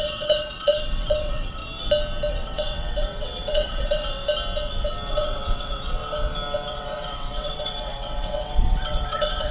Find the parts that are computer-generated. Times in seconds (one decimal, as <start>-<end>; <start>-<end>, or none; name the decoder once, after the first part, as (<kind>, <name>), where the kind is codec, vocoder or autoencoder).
0.0-1.6 (vocoder, WaveNeXt); 2.3-4.2; 5.1-6.0; 6.7-9.5

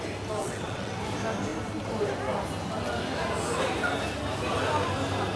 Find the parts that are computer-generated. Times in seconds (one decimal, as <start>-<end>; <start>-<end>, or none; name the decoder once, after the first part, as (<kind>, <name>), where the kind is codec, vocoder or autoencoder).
0.4-1.0 (vocoder, WaveNeXt)

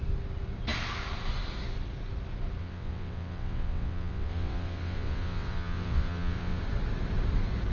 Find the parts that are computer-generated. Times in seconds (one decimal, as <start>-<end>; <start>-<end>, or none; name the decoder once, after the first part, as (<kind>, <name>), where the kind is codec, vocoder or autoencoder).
2.6-6.6 (vocoder, WaveNeXt)

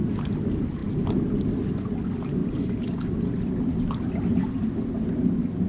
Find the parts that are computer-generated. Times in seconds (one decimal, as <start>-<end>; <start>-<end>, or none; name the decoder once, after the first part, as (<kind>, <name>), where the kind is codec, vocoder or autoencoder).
none